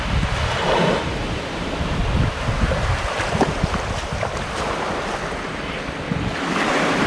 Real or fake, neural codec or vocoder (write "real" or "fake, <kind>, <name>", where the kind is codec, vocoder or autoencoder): real